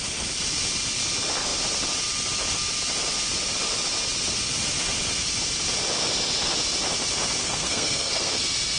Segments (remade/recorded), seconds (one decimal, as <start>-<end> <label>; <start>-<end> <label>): 0.0-7.4 recorded; 7.4-8.4 remade; 8.4-8.8 recorded